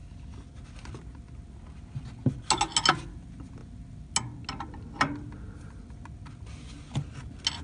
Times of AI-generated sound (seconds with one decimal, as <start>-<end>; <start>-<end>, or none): none